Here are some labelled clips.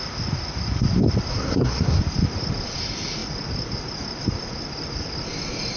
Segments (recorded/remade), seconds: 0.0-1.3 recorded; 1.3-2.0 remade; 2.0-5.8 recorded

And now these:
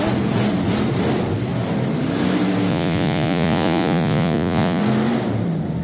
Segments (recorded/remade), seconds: 0.0-2.7 recorded; 2.7-4.8 remade; 4.8-5.8 recorded